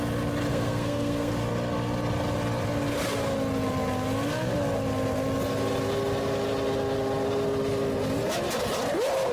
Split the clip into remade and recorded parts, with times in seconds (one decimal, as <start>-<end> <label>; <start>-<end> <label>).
0.0-0.5 recorded; 0.5-1.3 remade; 1.3-9.3 recorded